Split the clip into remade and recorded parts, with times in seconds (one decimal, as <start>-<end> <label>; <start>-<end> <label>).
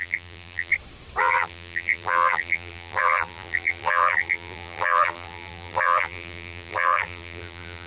0.0-0.7 remade; 0.7-1.2 recorded; 1.2-7.9 remade